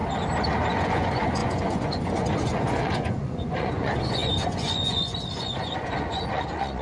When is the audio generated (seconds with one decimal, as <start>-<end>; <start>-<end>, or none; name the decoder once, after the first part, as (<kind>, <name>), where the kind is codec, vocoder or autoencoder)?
0.7-6.8 (vocoder, Vocos)

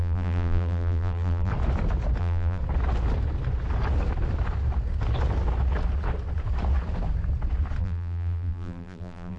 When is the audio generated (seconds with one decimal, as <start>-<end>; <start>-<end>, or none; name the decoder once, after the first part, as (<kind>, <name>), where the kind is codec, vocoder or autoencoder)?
0.0-1.5 (vocoder, BigVGAN v2); 2.2-2.6; 7.8-9.4

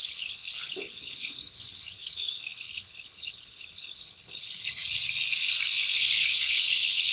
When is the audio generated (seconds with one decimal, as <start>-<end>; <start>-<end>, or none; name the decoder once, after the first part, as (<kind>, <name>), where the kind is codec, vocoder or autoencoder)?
0.0-4.8 (codec, HILCodec); 5.9-7.1